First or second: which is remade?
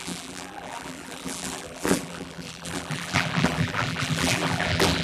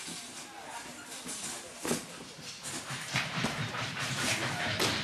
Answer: first